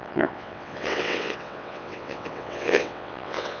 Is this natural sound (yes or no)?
no